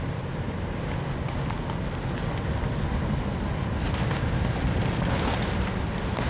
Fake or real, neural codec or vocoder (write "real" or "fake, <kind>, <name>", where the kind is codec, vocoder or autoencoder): real